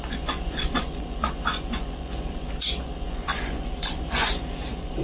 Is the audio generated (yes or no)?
yes